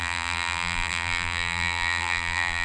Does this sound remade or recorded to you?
remade